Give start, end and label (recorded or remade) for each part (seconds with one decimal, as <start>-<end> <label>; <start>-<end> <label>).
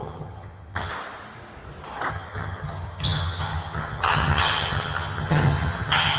0.0-0.9 remade; 0.9-2.1 recorded; 2.1-6.2 remade